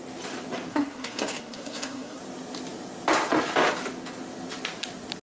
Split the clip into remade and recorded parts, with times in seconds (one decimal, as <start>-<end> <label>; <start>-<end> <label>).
0.0-0.7 recorded; 0.7-2.2 remade; 2.2-5.4 recorded